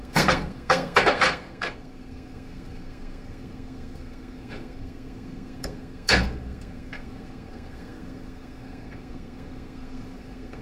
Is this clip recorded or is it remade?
remade